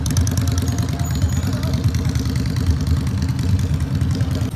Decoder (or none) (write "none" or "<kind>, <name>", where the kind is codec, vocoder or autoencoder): none